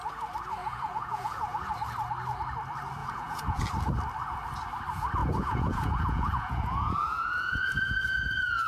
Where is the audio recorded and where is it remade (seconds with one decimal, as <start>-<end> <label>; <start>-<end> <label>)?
0.0-0.6 recorded; 0.6-1.7 remade; 1.7-3.0 recorded; 3.0-3.6 remade; 3.6-5.2 recorded; 5.2-8.7 remade

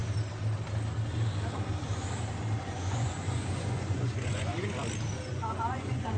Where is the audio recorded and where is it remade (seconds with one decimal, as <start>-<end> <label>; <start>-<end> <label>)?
0.0-2.6 recorded; 2.6-4.5 remade; 4.5-5.3 recorded; 5.3-6.2 remade

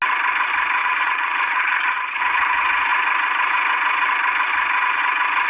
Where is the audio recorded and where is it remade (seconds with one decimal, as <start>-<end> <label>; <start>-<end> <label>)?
0.0-0.8 recorded; 0.8-2.2 remade; 2.2-5.5 recorded

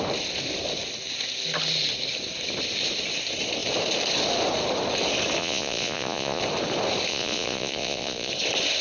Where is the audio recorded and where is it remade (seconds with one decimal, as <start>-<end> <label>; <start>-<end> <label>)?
0.0-5.4 recorded; 5.4-6.4 remade; 6.4-7.1 recorded; 7.1-8.3 remade; 8.3-8.8 recorded

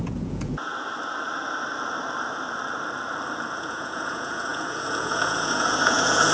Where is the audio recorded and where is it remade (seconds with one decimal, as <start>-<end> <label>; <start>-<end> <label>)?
0.0-0.7 remade; 0.7-3.6 recorded; 3.6-6.3 remade

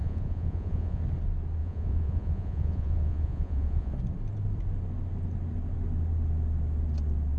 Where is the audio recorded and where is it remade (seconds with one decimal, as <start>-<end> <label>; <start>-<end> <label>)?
0.0-1.0 remade; 1.0-1.6 recorded; 1.6-3.9 remade; 3.9-7.4 recorded

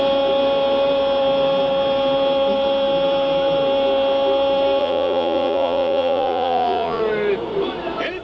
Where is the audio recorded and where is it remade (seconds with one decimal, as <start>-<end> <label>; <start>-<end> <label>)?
0.0-4.8 recorded; 4.8-7.0 remade; 7.0-8.2 recorded